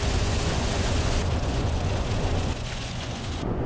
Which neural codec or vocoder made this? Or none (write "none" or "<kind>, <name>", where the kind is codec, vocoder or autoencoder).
vocoder, Vocos